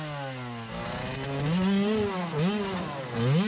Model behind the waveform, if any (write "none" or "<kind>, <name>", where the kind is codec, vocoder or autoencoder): none